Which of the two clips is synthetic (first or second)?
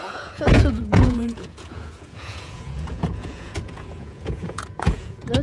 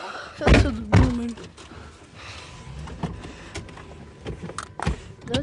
first